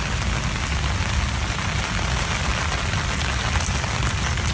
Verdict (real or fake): real